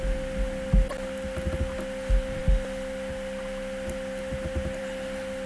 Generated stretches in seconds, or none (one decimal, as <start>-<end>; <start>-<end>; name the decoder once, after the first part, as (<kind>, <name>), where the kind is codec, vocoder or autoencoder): none